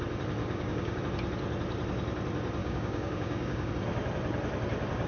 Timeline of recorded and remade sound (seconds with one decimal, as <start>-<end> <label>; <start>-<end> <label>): 0.0-0.4 recorded; 0.4-1.0 remade; 1.0-2.6 recorded; 2.6-3.7 remade; 3.7-5.1 recorded